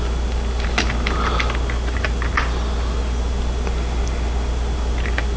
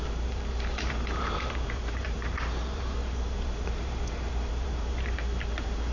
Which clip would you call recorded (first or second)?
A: first